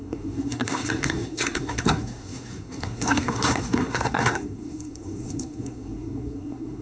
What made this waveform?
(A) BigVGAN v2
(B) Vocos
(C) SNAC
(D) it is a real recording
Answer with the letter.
C